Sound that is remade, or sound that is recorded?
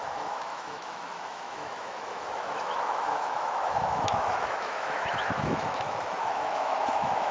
remade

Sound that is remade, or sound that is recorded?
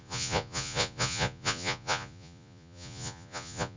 remade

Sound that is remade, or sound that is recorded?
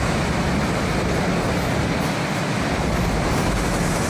recorded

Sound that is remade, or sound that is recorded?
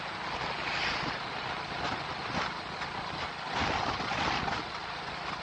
recorded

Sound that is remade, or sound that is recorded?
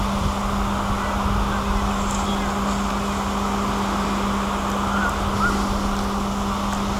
recorded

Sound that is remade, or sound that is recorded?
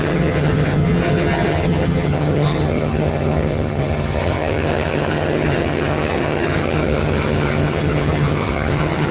remade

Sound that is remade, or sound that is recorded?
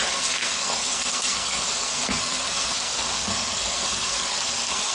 remade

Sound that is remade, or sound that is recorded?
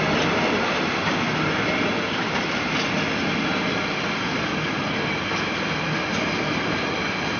recorded